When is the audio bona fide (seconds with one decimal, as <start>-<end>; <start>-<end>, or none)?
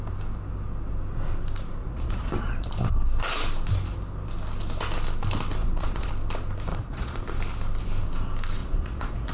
0.0-1.8; 2.7-5.6; 6.1-6.7; 7.2-8.6